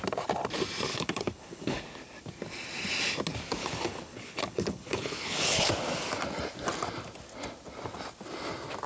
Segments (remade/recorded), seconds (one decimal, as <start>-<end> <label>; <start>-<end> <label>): 0.0-0.9 recorded; 0.9-1.8 remade; 1.8-3.6 recorded; 3.6-5.7 remade; 5.7-8.9 recorded